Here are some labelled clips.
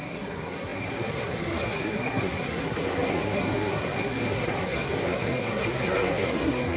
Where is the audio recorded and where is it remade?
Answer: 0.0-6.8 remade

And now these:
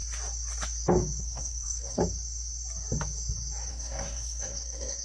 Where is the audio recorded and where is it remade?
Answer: 0.0-1.2 recorded; 1.2-2.0 remade; 2.0-3.7 recorded; 3.7-5.0 remade

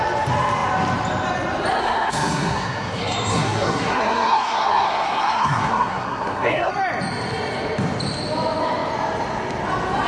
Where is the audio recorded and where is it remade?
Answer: 0.0-1.8 recorded; 1.8-6.7 remade; 6.7-10.1 recorded

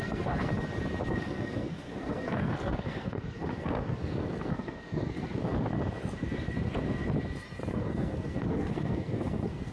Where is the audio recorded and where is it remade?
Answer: 0.0-0.5 remade; 0.5-1.1 recorded; 1.1-5.4 remade; 5.4-7.7 recorded; 7.7-9.7 remade

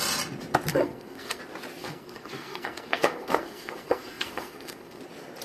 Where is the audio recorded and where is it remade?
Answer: 0.0-0.7 recorded; 0.7-1.4 remade; 1.4-1.8 recorded; 1.8-5.0 remade; 5.0-5.4 recorded

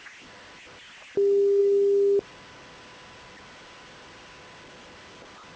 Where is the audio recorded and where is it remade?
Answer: 0.0-5.6 recorded

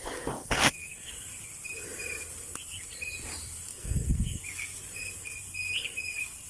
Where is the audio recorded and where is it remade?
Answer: 0.0-0.4 recorded; 0.4-1.1 remade; 1.1-3.7 recorded; 3.7-4.4 remade; 4.4-6.5 recorded

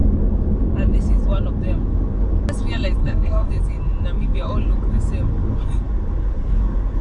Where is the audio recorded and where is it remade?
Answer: 0.0-3.0 recorded; 3.0-3.5 remade; 3.5-7.0 recorded